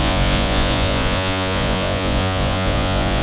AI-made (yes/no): yes